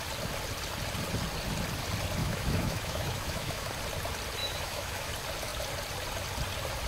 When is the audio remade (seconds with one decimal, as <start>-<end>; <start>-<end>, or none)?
2.2-3.7; 4.4-5.1

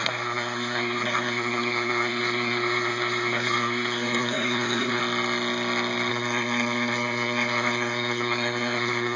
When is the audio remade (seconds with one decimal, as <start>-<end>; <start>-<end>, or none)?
0.0-5.0; 6.1-9.2

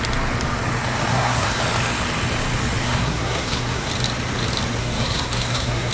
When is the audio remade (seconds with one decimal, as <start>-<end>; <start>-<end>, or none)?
1.1-1.6; 2.8-3.9; 4.8-5.9

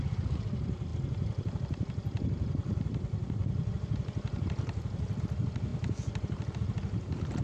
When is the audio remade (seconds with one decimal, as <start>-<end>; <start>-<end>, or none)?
0.9-5.2

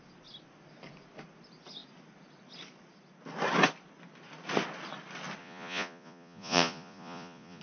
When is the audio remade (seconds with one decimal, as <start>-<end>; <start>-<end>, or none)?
5.4-7.6

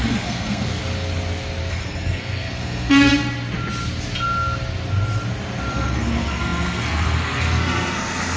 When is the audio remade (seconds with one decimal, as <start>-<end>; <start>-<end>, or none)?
0.0-0.8; 1.7-3.1; 5.7-8.4